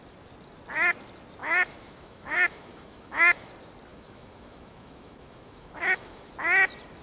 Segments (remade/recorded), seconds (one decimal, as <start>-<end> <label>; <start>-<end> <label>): 0.0-1.4 recorded; 1.4-3.5 remade; 3.5-3.9 recorded; 3.9-6.3 remade; 6.3-7.0 recorded